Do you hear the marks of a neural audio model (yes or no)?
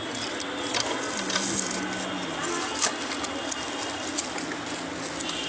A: no